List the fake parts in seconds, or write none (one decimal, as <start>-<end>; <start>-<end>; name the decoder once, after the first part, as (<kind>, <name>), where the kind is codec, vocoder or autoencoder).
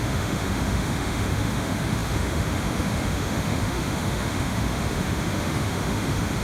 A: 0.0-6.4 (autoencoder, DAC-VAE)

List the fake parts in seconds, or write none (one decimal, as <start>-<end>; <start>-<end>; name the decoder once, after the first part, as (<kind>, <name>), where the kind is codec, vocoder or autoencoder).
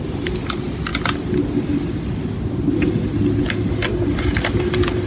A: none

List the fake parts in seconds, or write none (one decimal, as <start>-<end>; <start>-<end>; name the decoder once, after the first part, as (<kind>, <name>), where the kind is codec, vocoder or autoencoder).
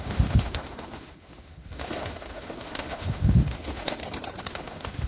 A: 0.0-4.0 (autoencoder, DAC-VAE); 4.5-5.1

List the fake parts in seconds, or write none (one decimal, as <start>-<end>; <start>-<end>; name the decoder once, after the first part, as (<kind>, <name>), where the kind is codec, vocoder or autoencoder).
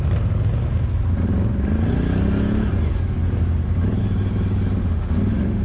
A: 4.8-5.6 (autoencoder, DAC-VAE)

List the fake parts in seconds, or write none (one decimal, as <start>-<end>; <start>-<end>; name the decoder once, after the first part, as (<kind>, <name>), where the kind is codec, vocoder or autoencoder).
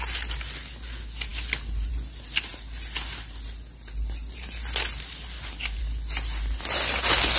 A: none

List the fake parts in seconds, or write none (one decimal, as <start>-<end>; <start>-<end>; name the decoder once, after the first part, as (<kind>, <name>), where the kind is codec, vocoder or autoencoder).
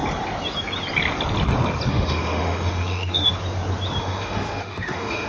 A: 1.9-3.3 (autoencoder, DAC-VAE); 4.0-5.3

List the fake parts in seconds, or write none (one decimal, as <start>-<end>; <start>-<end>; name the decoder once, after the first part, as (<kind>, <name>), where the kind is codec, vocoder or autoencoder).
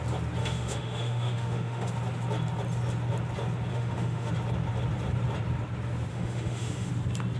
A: 0.4-1.9 (autoencoder, DAC-VAE); 3.7-4.3; 6.1-6.9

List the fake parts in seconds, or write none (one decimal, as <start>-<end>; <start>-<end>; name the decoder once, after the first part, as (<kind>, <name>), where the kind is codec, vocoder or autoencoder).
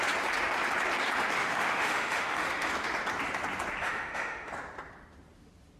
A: 1.4-2.7 (autoencoder, DAC-VAE); 3.8-4.5